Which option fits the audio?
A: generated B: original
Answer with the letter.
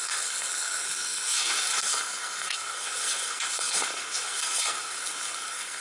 A